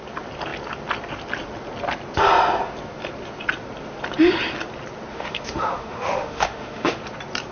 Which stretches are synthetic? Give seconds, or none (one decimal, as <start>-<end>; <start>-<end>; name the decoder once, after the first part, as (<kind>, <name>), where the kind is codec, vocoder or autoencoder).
5.1-7.0 (autoencoder, DAC-VAE)